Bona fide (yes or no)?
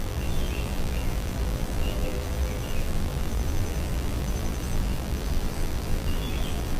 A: no